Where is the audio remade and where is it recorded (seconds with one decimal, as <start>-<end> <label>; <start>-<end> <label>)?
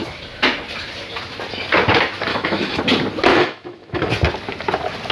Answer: 0.0-2.3 recorded; 2.3-2.8 remade; 2.8-3.3 recorded; 3.3-4.1 remade; 4.1-5.1 recorded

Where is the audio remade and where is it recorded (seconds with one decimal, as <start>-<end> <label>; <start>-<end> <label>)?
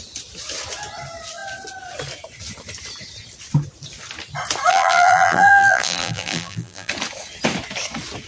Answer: 0.0-4.7 recorded; 4.7-6.9 remade; 6.9-8.3 recorded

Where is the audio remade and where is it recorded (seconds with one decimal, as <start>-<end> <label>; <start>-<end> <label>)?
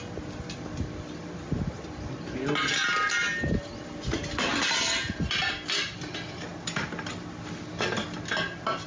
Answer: 0.0-8.9 recorded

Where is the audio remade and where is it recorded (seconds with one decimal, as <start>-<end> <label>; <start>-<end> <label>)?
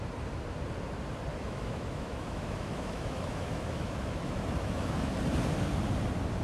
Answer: 0.0-1.3 recorded; 1.3-5.1 remade; 5.1-6.4 recorded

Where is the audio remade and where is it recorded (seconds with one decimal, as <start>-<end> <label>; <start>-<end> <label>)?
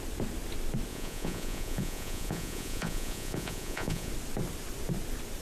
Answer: 0.0-0.9 recorded; 0.9-4.1 remade; 4.1-5.4 recorded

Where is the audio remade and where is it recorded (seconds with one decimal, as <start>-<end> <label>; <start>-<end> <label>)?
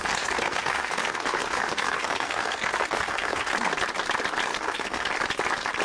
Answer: 0.0-3.5 remade; 3.5-4.5 recorded; 4.5-5.1 remade; 5.1-5.8 recorded